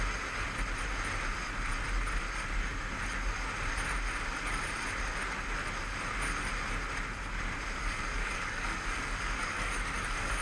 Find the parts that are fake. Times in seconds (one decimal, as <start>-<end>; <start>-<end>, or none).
7.8-10.4